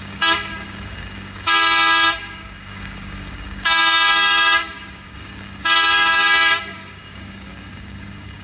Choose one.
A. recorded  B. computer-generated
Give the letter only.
B